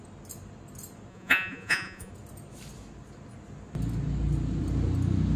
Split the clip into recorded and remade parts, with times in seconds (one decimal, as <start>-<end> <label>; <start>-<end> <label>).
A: 0.0-1.1 recorded; 1.1-2.1 remade; 2.1-5.4 recorded